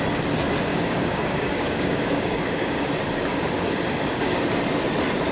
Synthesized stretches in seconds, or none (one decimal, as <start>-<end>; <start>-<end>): 0.7-2.9; 3.3-4.4